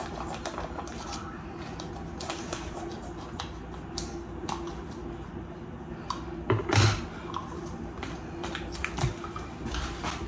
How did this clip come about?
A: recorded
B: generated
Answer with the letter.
A